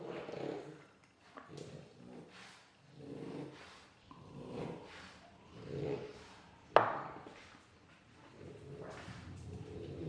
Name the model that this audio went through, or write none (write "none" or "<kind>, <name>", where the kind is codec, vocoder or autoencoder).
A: none